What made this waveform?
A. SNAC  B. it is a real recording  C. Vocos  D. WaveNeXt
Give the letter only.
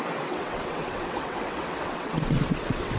D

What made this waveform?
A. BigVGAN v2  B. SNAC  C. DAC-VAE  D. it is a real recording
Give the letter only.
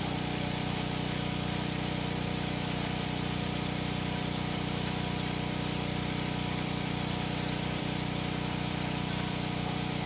A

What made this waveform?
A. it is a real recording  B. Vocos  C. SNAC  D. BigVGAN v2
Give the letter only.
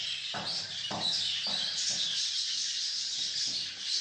D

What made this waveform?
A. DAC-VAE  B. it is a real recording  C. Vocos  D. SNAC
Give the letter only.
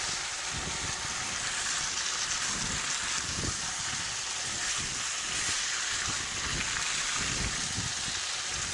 B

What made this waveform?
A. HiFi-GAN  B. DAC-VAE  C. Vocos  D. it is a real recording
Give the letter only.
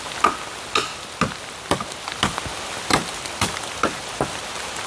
D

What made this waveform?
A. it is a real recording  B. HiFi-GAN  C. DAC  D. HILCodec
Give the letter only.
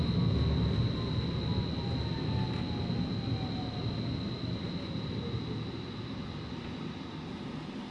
A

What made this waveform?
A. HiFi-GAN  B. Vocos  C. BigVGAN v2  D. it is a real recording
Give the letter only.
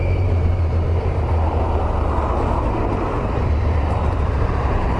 C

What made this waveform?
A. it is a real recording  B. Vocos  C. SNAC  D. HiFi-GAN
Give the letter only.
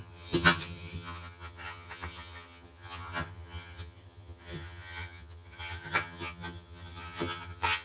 D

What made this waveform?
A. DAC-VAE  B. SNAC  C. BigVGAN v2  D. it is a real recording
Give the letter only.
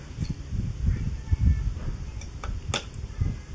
D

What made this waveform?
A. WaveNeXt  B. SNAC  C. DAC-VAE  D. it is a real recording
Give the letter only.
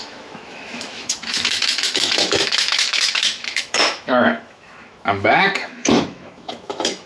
C